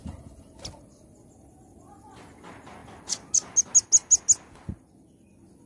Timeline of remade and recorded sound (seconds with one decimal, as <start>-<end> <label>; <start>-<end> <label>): 0.0-5.7 recorded